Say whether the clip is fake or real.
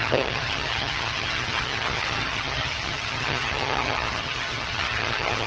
fake